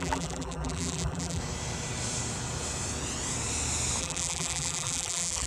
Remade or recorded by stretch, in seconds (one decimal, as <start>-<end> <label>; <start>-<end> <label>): 0.0-1.4 remade; 1.4-4.0 recorded; 4.0-5.5 remade